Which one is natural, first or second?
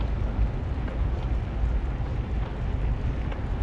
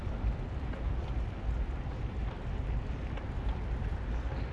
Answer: first